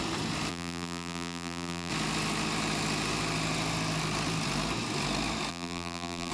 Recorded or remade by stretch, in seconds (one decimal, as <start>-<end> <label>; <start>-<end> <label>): 0.0-0.5 recorded; 0.5-1.9 remade; 1.9-5.5 recorded; 5.5-6.3 remade